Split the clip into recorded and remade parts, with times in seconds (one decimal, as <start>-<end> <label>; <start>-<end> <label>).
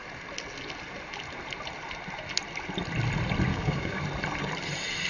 0.0-3.5 recorded; 3.5-4.0 remade; 4.0-5.1 recorded